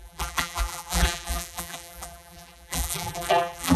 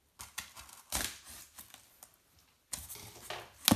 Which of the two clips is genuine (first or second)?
second